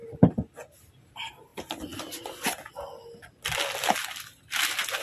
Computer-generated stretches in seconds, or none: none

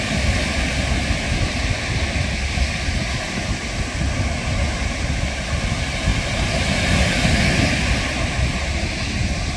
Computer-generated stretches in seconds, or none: none

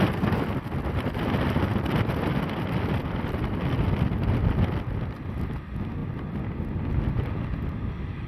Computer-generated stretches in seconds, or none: none